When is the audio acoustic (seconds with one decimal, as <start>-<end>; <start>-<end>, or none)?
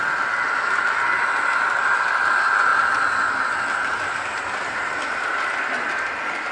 0.0-3.8; 5.5-6.5